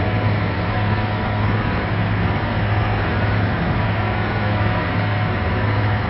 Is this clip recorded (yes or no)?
no